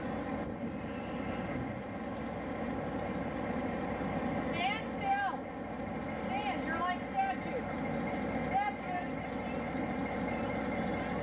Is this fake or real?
real